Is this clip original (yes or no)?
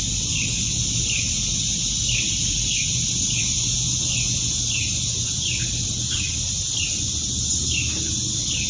yes